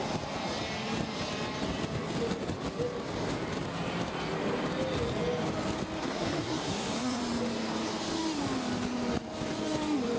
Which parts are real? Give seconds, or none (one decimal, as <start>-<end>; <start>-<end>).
0.0-6.0; 7.2-10.2